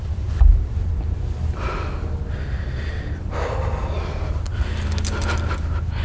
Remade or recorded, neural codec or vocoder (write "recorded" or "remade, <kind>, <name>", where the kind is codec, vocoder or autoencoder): recorded